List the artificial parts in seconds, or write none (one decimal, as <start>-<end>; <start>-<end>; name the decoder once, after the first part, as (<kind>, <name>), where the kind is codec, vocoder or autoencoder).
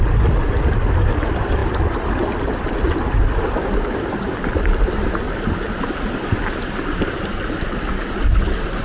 none